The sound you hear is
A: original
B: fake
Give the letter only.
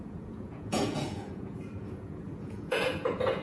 B